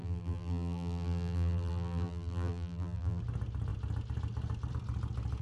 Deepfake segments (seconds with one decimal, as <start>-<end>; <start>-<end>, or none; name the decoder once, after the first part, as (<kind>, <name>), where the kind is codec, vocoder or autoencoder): 0.0-3.2 (vocoder, BigVGAN v2)